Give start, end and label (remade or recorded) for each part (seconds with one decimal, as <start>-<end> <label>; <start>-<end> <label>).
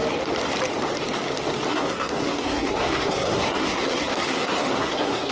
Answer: 0.0-1.7 recorded; 1.7-5.3 remade